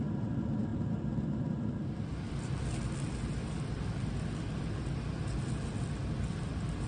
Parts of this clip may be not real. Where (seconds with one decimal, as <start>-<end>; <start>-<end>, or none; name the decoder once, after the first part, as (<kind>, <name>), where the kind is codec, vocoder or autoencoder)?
none

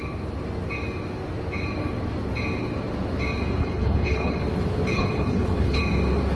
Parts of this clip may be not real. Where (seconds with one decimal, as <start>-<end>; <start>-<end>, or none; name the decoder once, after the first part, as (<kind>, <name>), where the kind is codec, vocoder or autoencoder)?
3.6-4.4 (codec, HILCodec); 4.9-5.8

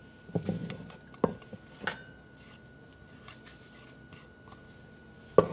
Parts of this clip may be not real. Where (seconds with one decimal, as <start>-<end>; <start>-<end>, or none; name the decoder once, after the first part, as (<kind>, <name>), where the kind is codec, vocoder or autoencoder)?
none

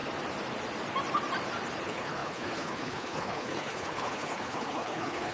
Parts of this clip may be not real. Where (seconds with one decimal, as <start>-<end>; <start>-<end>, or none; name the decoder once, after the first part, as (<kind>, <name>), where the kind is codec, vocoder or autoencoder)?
1.8-5.3 (codec, HILCodec)